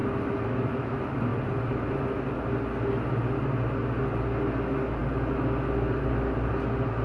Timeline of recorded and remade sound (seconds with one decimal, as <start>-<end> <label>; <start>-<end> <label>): 0.0-0.7 remade; 0.7-7.0 recorded